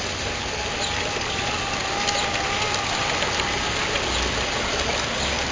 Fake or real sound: real